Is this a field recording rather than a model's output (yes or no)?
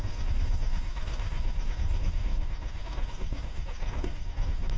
no